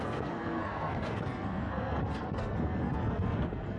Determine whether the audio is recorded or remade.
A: remade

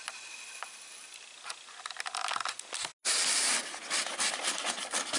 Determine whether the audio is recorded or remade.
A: recorded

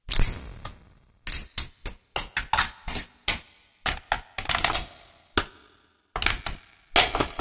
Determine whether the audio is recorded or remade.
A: recorded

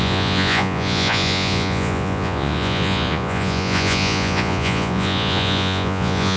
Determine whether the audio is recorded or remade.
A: remade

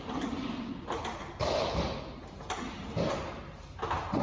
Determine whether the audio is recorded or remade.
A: recorded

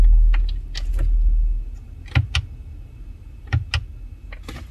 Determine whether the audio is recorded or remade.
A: recorded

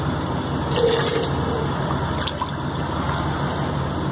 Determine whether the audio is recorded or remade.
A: recorded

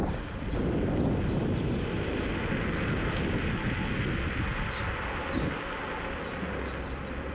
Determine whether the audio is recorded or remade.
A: recorded